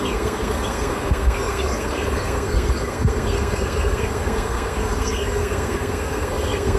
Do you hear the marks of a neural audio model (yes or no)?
yes